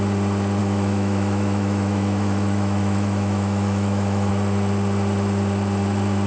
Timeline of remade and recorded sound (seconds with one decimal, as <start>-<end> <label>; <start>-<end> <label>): 0.0-0.6 recorded; 0.6-4.3 remade; 4.3-6.3 recorded